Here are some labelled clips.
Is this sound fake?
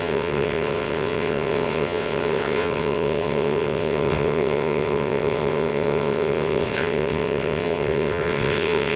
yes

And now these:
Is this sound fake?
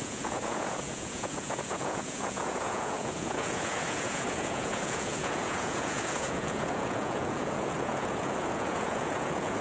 yes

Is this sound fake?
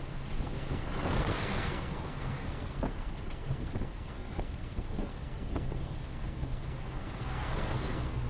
yes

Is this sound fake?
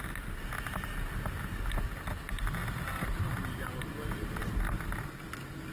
no